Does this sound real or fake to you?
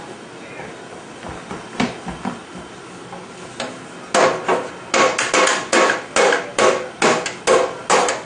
real